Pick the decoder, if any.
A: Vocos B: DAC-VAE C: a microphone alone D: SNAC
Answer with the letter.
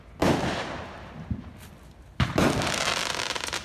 C